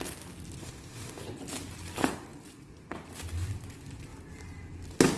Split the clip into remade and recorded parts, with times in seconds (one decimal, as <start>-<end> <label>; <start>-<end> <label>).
0.0-0.6 recorded; 0.6-1.2 remade; 1.2-5.2 recorded